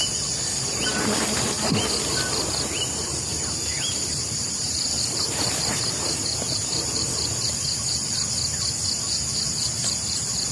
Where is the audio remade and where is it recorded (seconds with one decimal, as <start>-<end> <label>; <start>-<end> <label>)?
0.0-3.3 recorded; 3.3-5.0 remade; 5.0-5.7 recorded; 5.7-7.0 remade; 7.0-10.5 recorded